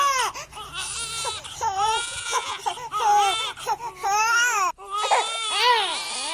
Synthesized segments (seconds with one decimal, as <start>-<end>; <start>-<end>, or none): 2.0-2.6